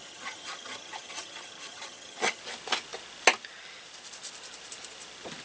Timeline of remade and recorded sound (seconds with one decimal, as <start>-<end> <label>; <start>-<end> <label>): 0.0-2.4 remade; 2.4-5.4 recorded